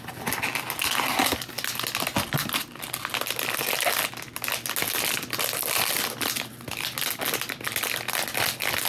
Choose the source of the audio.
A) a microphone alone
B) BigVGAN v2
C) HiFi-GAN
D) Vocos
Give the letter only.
A